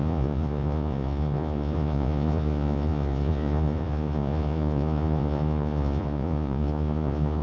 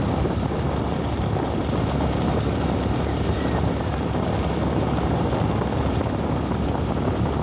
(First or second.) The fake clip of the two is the first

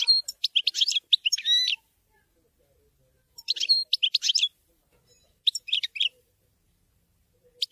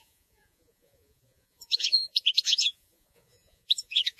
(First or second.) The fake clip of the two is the second